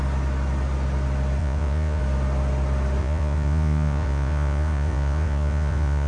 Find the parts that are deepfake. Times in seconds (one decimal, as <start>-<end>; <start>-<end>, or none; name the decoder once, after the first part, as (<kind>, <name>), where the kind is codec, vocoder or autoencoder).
1.4-2.0 (vocoder, Vocos); 3.0-6.1